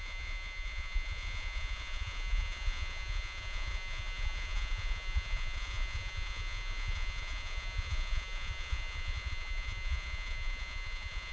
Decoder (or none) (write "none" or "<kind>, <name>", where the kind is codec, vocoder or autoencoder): vocoder, Vocos